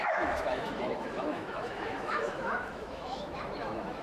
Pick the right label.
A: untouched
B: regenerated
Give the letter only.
B